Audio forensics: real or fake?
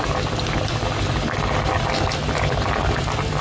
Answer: fake